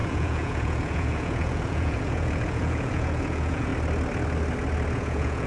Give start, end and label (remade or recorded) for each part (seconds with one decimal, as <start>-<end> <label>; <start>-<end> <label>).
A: 0.0-3.7 remade; 3.7-4.9 recorded; 4.9-5.5 remade